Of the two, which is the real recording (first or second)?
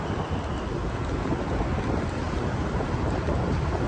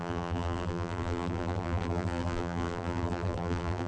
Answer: first